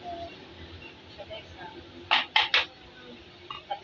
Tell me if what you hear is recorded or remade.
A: recorded